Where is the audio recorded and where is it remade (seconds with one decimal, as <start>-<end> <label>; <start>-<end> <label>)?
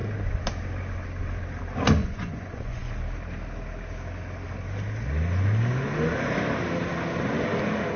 0.0-2.0 recorded; 2.0-2.9 remade; 2.9-8.0 recorded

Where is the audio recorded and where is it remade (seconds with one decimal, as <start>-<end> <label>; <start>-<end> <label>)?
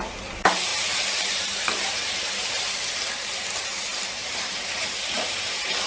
0.0-0.7 recorded; 0.7-2.6 remade; 2.6-4.2 recorded; 4.2-4.8 remade; 4.8-5.9 recorded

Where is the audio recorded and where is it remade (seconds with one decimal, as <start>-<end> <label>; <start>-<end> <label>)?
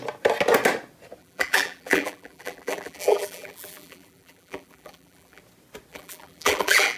0.0-1.2 recorded; 1.2-5.4 remade; 5.4-5.9 recorded; 5.9-7.0 remade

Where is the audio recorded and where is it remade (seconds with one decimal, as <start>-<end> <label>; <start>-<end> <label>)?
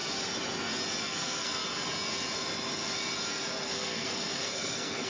0.0-1.0 recorded; 1.0-1.6 remade; 1.6-3.6 recorded; 3.6-5.1 remade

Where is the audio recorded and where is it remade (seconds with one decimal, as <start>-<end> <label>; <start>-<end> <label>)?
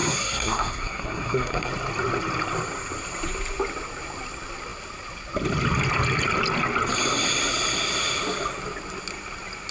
0.0-1.7 remade; 1.7-9.7 recorded